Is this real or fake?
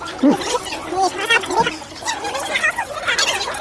real